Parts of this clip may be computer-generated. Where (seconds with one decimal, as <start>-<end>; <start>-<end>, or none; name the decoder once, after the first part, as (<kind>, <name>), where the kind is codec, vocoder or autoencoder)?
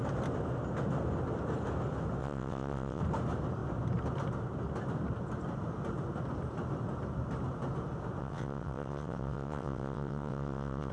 2.2-3.0 (vocoder, WaveNeXt); 8.2-10.9